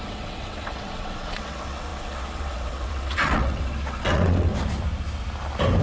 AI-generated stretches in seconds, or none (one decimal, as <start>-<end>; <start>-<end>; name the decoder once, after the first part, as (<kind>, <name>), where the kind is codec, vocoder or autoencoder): 0.0-4.5 (vocoder, WaveNeXt)